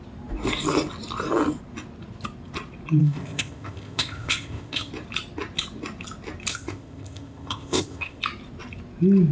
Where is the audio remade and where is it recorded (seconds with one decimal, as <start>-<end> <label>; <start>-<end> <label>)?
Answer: 0.0-3.0 recorded; 3.0-4.9 remade; 4.9-6.5 recorded; 6.5-8.2 remade; 8.2-9.3 recorded